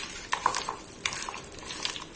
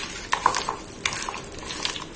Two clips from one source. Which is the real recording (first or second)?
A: second